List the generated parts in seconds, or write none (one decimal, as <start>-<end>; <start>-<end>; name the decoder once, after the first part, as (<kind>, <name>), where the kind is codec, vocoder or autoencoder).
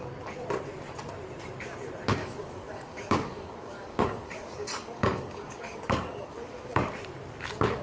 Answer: 2.2-6.9 (codec, DAC)